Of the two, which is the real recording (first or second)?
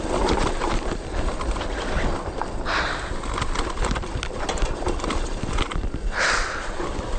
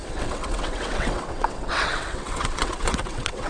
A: first